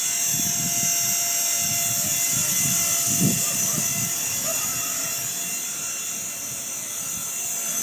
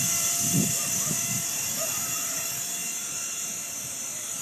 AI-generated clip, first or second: second